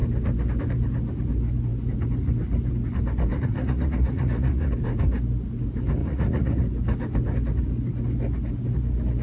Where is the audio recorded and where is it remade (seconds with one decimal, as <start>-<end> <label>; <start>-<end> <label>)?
0.0-3.3 recorded; 3.3-4.7 remade; 4.7-6.0 recorded; 6.0-6.6 remade; 6.6-9.2 recorded